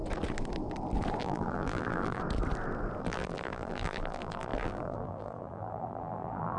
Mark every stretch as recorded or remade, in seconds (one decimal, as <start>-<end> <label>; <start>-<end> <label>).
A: 0.0-1.2 recorded; 1.2-2.2 remade; 2.2-3.0 recorded; 3.0-6.6 remade